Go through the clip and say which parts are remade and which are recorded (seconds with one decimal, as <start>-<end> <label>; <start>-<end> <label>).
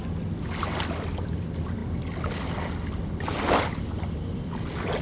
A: 0.0-5.0 recorded